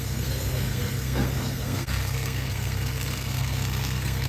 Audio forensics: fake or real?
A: fake